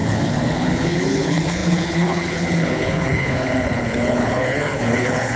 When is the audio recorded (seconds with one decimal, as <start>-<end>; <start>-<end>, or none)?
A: none